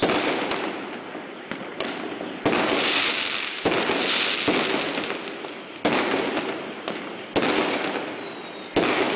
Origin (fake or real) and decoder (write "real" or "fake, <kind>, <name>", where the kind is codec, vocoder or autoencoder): real